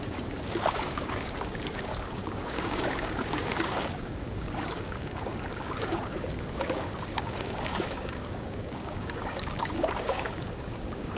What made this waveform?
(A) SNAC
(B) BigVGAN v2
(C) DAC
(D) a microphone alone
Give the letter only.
C